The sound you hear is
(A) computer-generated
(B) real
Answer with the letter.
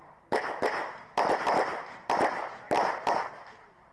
A